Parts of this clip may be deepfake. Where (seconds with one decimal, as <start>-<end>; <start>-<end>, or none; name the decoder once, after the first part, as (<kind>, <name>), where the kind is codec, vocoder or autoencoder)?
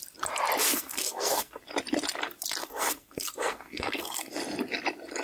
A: 0.7-1.6 (codec, SNAC); 2.6-4.3